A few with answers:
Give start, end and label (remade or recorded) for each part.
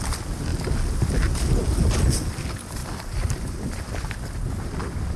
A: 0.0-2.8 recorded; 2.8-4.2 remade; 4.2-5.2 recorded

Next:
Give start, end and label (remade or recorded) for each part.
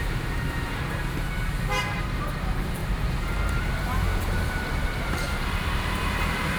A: 0.0-6.6 remade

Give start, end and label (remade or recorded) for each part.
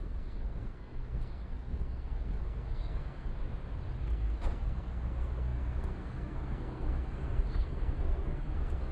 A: 0.0-3.3 remade; 3.3-4.0 recorded; 4.0-8.9 remade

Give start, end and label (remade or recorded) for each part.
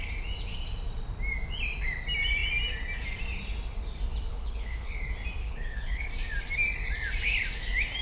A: 0.0-4.3 recorded; 4.3-5.0 remade; 5.0-5.4 recorded; 5.4-6.1 remade; 6.1-8.0 recorded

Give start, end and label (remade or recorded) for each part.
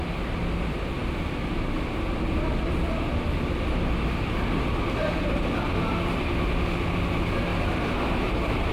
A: 0.0-7.5 recorded; 7.5-8.7 remade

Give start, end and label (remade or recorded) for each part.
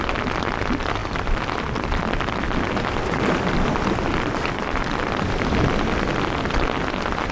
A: 0.0-7.3 recorded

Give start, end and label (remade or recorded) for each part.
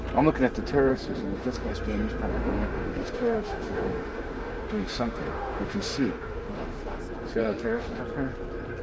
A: 0.0-0.9 recorded; 0.9-1.7 remade; 1.7-2.3 recorded; 2.3-7.0 remade; 7.0-7.4 recorded; 7.4-8.0 remade; 8.0-8.8 recorded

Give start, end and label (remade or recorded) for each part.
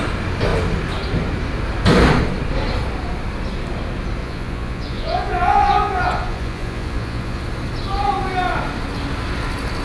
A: 0.0-4.2 recorded; 4.2-7.4 remade; 7.4-9.8 recorded